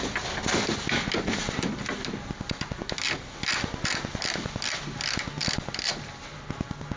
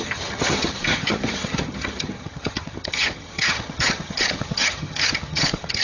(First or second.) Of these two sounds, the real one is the first